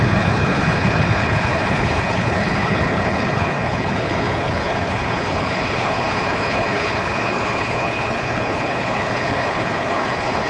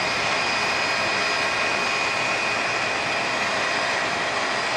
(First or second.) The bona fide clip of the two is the second